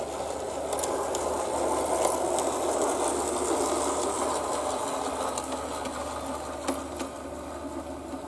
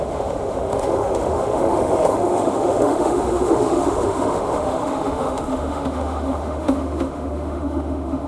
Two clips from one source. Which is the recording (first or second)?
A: first